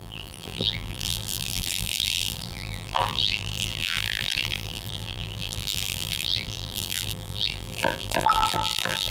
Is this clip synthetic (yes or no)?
yes